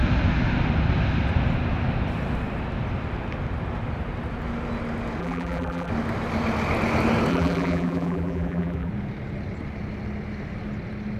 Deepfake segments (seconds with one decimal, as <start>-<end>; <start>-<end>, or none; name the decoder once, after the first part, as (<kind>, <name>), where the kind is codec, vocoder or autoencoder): 5.2-5.9 (vocoder, BigVGAN v2); 7.3-8.9